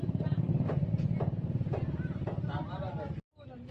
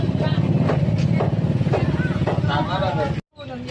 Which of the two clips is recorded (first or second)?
second